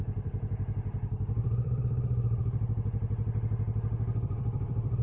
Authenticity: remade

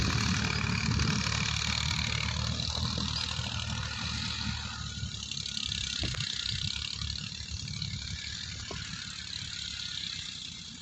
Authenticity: recorded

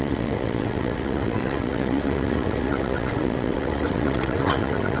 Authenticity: remade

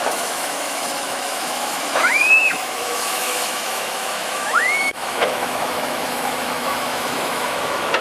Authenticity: remade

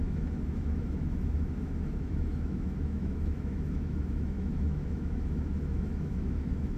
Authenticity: remade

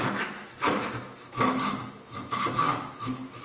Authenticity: remade